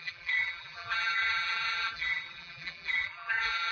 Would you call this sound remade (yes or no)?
yes